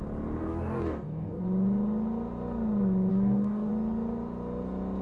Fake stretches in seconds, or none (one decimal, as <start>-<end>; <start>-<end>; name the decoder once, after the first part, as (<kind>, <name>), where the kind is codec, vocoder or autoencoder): 0.4-1.4 (codec, DAC); 3.1-3.7

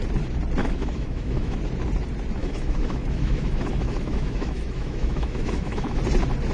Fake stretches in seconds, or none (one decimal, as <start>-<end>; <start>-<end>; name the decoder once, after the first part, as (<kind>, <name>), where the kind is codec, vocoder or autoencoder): 0.6-1.6 (autoencoder, DAC-VAE); 2.4-6.0

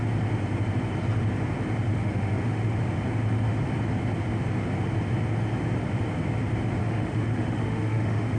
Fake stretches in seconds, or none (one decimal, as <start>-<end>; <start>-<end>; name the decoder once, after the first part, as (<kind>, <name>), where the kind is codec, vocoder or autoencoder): 1.9-2.8 (autoencoder, DAC-VAE); 6.8-8.4

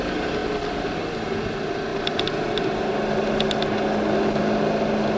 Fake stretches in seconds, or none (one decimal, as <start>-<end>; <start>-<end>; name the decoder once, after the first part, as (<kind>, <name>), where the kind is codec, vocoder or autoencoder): none

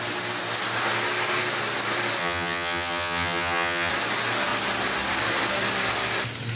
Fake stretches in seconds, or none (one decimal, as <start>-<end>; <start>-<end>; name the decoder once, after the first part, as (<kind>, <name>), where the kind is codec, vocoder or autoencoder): 2.2-3.9 (vocoder, HiFi-GAN)

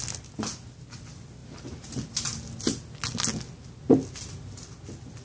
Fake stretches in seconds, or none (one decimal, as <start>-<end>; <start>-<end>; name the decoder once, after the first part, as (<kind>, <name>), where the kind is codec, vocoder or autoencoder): none

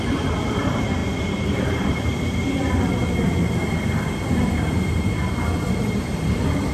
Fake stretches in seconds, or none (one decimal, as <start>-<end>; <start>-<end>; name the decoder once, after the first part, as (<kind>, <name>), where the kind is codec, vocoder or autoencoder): 0.0-6.7 (vocoder, BigVGAN v2)